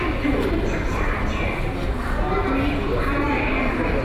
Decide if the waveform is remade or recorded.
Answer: recorded